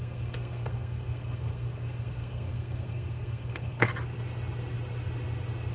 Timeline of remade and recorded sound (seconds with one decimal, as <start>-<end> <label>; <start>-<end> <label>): 0.0-3.9 remade; 3.9-5.7 recorded

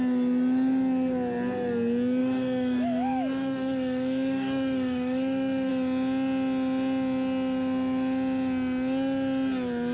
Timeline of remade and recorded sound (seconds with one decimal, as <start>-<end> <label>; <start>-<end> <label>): 0.0-2.2 recorded; 2.2-5.7 remade; 5.7-9.9 recorded

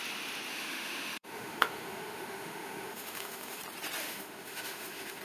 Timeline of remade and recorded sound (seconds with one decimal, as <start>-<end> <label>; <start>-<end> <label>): 0.0-0.5 recorded; 0.5-3.6 remade; 3.6-4.0 recorded; 4.0-5.2 remade

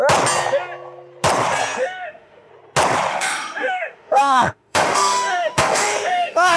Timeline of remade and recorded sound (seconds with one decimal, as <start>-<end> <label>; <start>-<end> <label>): 0.0-1.8 recorded; 1.8-2.5 remade; 2.5-3.1 recorded; 3.1-6.6 remade

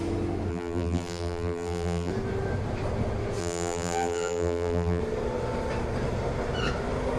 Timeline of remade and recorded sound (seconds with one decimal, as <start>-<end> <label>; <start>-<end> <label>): 0.0-0.5 recorded; 0.5-2.1 remade; 2.1-3.4 recorded; 3.4-5.0 remade; 5.0-7.2 recorded